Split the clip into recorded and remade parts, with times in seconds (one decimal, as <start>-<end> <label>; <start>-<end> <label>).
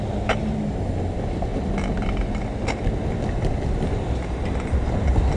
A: 0.0-5.4 recorded